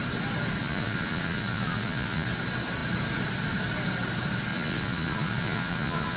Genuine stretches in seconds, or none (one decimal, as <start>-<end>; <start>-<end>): 0.0-0.6; 2.3-4.5